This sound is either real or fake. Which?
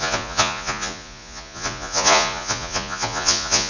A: fake